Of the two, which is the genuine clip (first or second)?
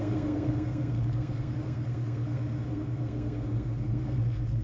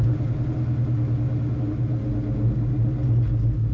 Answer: second